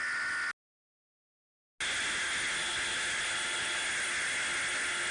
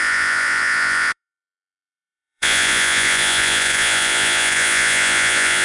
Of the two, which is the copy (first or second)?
second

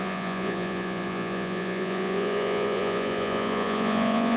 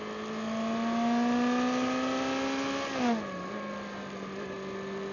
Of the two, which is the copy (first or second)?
first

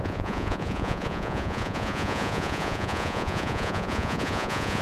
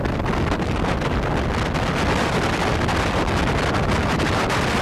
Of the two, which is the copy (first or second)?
first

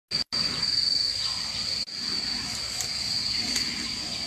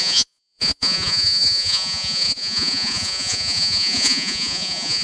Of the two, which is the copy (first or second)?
second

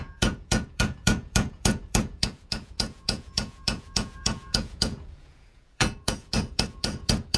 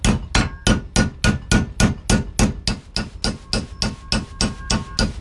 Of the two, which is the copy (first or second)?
first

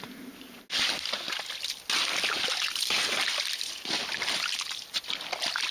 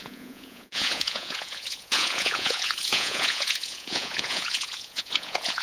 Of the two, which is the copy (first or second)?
second